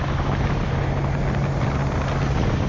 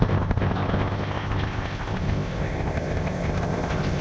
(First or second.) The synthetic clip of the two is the second